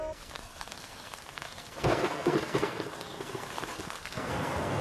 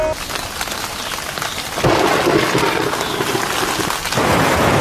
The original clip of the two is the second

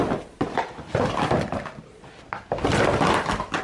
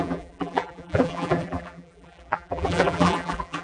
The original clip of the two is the first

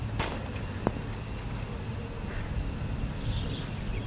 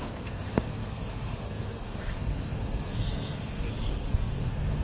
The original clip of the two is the first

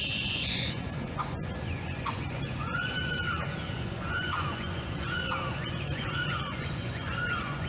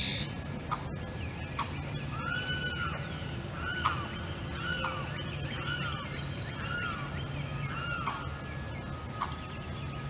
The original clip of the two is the second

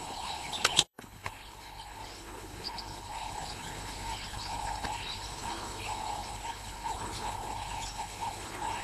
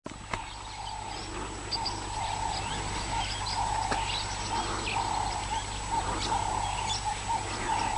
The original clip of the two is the second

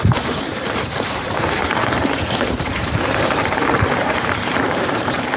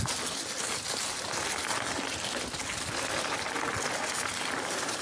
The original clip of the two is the second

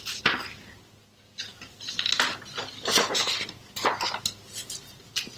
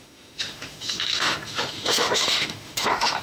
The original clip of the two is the first